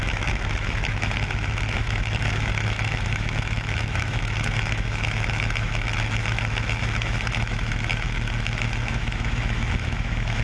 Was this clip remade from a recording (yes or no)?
yes